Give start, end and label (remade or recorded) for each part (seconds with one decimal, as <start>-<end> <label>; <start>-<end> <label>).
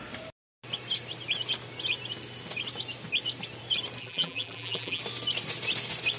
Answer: 0.0-4.0 recorded; 4.0-5.0 remade; 5.0-6.2 recorded